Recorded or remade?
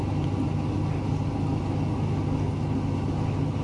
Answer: recorded